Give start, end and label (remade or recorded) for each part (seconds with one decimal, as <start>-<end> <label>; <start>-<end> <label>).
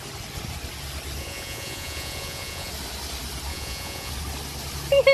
0.0-1.2 recorded; 1.2-2.7 remade; 2.7-3.5 recorded; 3.5-4.1 remade; 4.1-5.1 recorded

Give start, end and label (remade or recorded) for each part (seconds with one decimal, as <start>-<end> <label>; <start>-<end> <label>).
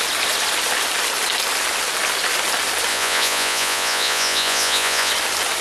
0.0-2.9 recorded; 2.9-5.1 remade; 5.1-5.6 recorded